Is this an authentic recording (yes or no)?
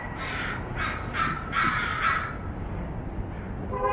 yes